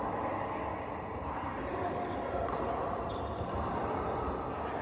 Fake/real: fake